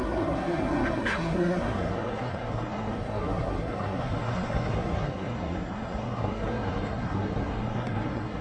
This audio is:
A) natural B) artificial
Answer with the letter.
B